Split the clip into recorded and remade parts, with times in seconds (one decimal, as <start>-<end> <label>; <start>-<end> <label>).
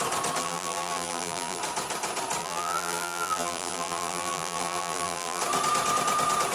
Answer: 0.0-0.4 recorded; 0.4-1.6 remade; 1.6-2.4 recorded; 2.4-5.4 remade; 5.4-6.5 recorded